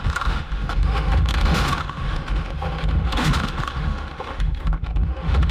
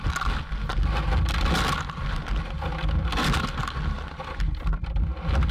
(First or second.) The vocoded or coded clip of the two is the first